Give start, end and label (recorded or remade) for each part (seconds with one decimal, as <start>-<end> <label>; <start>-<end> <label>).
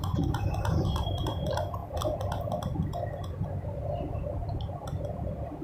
0.0-5.6 recorded